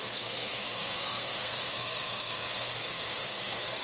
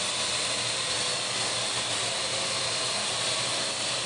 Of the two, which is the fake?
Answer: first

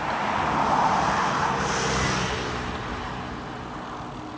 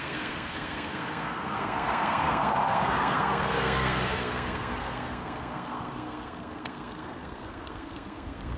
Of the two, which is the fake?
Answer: second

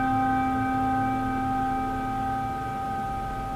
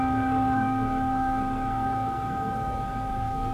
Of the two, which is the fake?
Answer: second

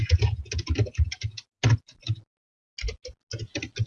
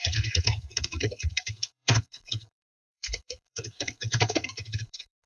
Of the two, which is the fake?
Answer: second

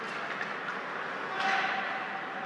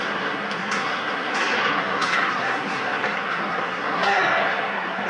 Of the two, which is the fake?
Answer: second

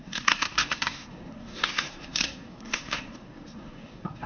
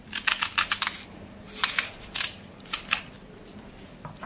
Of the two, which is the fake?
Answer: first